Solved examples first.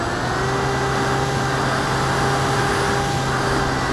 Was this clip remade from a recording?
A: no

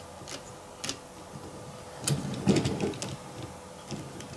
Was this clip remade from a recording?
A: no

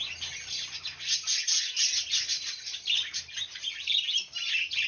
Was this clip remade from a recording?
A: no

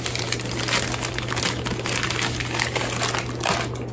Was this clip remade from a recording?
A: no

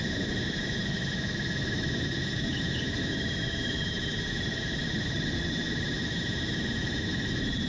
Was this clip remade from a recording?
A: yes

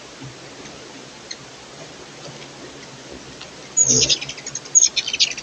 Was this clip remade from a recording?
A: no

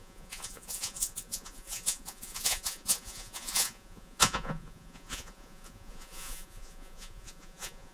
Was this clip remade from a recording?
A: yes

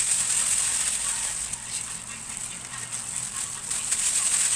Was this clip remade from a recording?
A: no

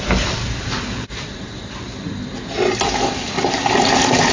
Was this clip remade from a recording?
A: no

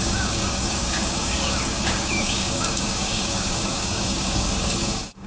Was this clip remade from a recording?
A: yes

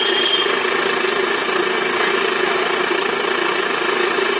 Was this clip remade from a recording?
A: no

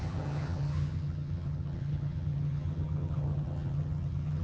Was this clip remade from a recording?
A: yes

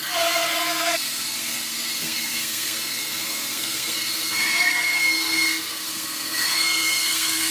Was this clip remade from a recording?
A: yes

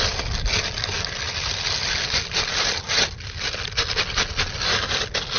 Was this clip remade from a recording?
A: no